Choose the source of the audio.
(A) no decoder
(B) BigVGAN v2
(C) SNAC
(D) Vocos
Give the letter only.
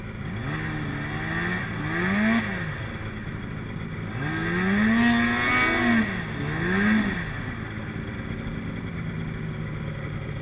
A